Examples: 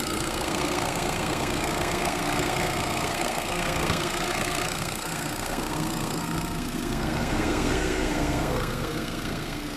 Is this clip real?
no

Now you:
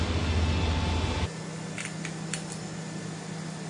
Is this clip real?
yes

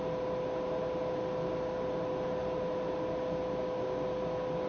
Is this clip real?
yes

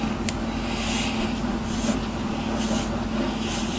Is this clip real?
yes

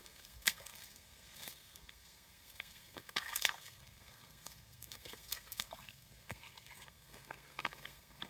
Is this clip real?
no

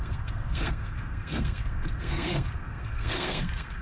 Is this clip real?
no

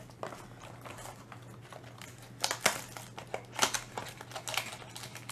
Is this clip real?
yes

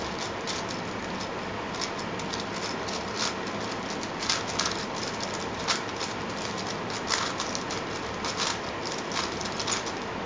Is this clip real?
yes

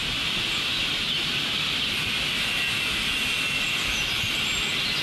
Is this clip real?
yes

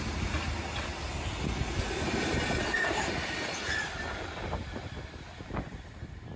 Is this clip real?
yes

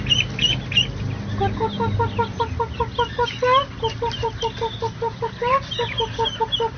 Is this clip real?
yes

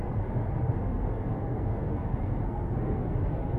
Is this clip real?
no